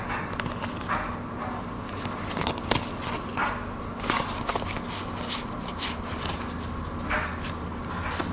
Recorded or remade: recorded